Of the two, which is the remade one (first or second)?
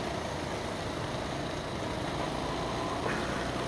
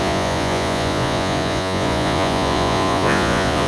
second